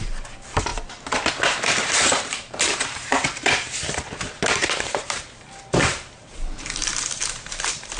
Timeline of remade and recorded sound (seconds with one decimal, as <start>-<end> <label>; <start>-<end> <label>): 0.0-0.7 remade; 0.7-1.3 recorded; 1.3-3.1 remade; 3.1-3.9 recorded; 3.9-8.0 remade